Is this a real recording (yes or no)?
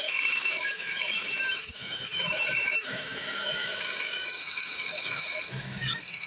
no